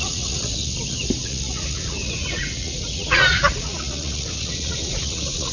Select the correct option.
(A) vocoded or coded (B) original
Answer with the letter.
A